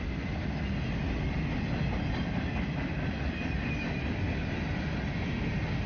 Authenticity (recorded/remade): recorded